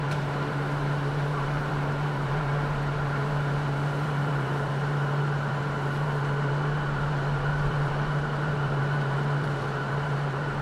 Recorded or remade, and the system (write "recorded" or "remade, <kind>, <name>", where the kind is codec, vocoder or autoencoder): remade, vocoder, BigVGAN v2